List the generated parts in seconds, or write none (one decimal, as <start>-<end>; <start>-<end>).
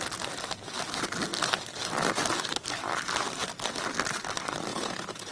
4.7-5.3